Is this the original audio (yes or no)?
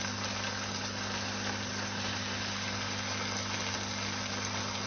yes